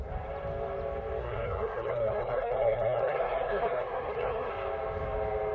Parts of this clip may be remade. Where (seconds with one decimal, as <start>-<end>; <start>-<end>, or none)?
1.2-4.5